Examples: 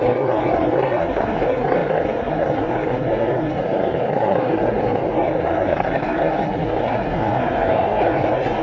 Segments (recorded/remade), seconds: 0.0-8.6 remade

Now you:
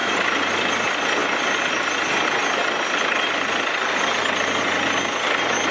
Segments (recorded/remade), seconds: 0.0-0.6 remade; 0.6-5.7 recorded

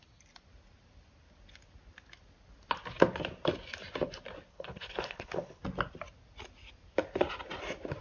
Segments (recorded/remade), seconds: 0.0-4.5 recorded; 4.5-5.6 remade; 5.6-8.0 recorded

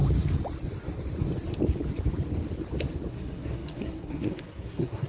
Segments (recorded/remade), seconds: 0.0-3.1 recorded; 3.1-5.1 remade

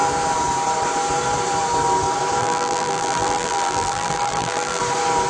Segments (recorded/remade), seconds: 0.0-2.4 recorded; 2.4-4.8 remade; 4.8-5.3 recorded